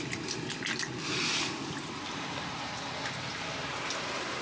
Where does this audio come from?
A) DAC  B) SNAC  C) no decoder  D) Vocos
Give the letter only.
C